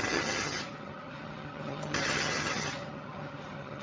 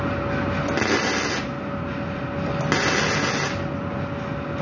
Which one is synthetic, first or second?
first